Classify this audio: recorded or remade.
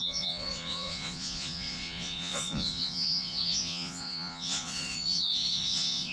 remade